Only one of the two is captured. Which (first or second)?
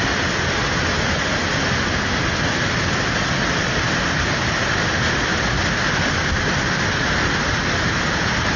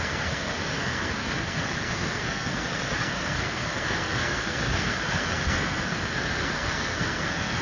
first